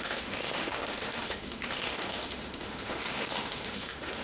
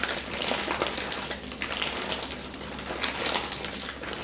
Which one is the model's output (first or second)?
first